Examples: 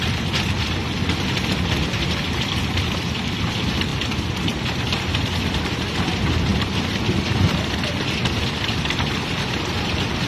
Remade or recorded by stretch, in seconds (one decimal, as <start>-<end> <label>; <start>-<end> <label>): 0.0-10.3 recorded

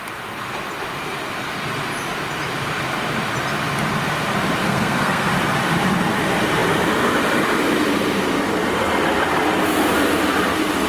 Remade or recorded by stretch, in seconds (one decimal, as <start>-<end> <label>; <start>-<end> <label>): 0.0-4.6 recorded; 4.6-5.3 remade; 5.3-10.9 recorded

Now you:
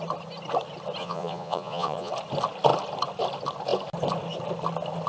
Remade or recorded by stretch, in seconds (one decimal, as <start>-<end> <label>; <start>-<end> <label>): 0.0-1.0 recorded; 1.0-2.1 remade; 2.1-5.1 recorded

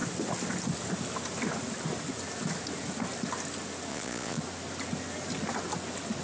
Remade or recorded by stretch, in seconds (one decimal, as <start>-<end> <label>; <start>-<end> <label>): 0.0-3.9 recorded; 3.9-4.4 remade; 4.4-6.2 recorded

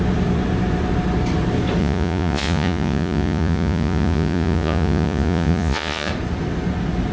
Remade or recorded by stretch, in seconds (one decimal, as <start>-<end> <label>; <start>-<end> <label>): 0.0-1.8 recorded; 1.8-6.1 remade; 6.1-7.1 recorded